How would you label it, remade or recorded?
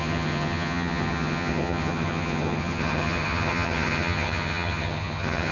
remade